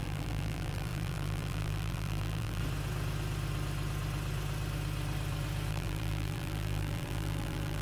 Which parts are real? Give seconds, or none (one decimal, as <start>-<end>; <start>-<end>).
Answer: 2.6-5.7

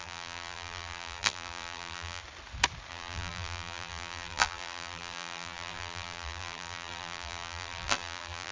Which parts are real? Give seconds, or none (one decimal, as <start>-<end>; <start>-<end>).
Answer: 2.2-2.9

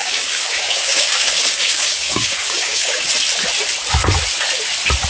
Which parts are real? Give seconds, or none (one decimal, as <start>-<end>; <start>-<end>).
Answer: 3.1-5.1